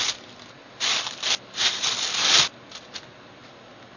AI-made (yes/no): no